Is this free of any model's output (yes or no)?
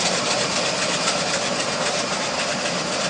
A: yes